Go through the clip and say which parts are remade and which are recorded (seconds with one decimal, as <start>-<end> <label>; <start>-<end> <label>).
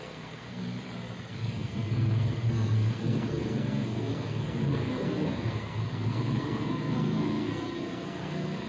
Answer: 0.0-0.6 remade; 0.6-1.2 recorded; 1.2-8.7 remade